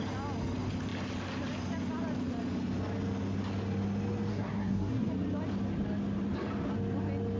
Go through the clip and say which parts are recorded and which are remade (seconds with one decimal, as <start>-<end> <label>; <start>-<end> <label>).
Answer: 0.0-4.3 recorded; 4.3-5.1 remade; 5.1-7.4 recorded